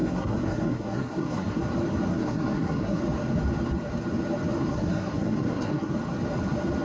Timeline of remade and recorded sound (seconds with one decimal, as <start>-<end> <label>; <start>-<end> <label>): 0.0-1.6 remade; 1.6-2.1 recorded; 2.1-3.0 remade; 3.0-4.7 recorded; 4.7-5.9 remade; 5.9-6.8 recorded